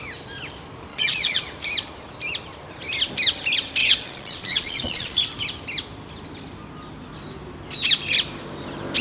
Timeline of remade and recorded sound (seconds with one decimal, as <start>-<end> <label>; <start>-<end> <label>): 0.0-0.9 recorded; 0.9-1.4 remade; 1.4-3.8 recorded; 3.8-5.2 remade; 5.2-9.0 recorded